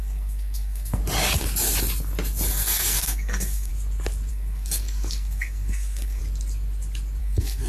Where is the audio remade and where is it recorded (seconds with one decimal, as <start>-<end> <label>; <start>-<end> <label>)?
0.0-1.0 remade; 1.0-2.5 recorded; 2.5-3.7 remade; 3.7-4.3 recorded; 4.3-6.2 remade; 6.2-7.2 recorded; 7.2-7.7 remade